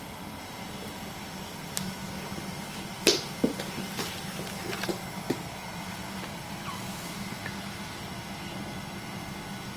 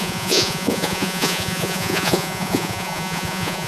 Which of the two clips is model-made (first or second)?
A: second